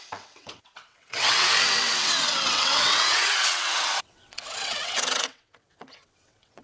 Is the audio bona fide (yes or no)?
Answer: no